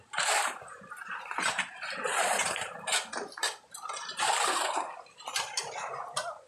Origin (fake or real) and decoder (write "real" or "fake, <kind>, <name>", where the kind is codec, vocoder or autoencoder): fake, vocoder, BigVGAN v2